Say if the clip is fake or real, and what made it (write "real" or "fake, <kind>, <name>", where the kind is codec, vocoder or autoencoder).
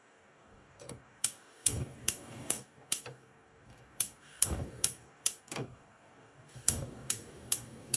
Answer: fake, codec, DAC